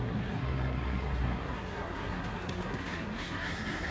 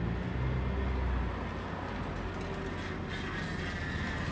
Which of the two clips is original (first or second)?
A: second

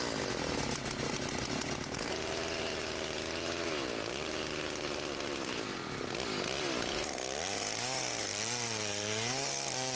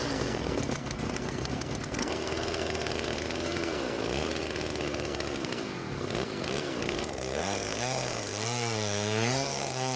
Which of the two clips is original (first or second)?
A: first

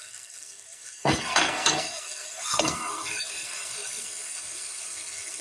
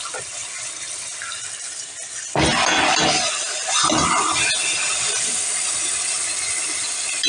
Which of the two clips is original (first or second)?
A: second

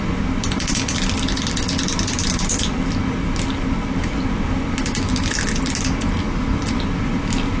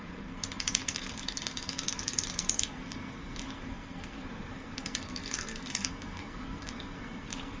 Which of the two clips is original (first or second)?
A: first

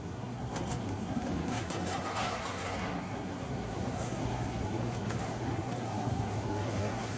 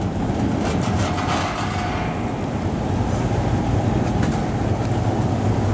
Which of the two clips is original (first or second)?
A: second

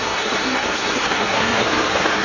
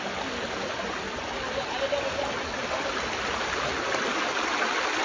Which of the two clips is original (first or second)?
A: second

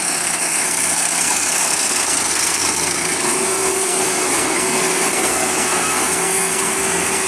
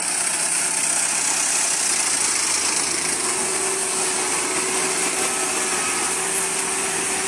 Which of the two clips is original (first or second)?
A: second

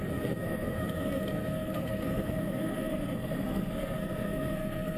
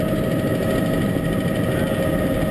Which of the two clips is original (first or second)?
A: second